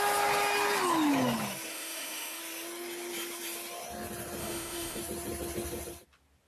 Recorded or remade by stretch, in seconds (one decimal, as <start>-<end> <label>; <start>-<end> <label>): 0.0-1.7 recorded; 1.7-2.4 remade; 2.4-4.4 recorded; 4.4-5.0 remade; 5.0-6.5 recorded